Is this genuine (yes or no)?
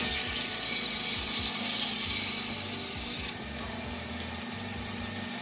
yes